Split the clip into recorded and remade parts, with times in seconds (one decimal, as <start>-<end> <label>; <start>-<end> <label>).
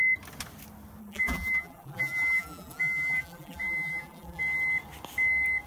0.0-1.0 recorded; 1.0-4.4 remade; 4.4-5.7 recorded